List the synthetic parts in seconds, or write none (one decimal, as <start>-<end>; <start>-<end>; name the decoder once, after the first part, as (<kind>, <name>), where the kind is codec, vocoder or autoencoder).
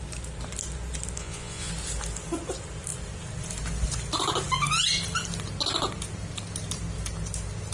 1.2-1.7 (vocoder, Vocos)